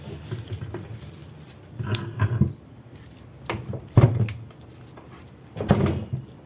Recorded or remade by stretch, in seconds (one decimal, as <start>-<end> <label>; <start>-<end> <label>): 0.0-6.5 recorded